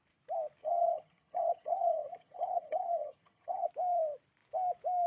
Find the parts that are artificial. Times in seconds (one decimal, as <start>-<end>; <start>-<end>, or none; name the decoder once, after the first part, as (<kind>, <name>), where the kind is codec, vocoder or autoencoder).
0.6-3.7 (vocoder, HiFi-GAN)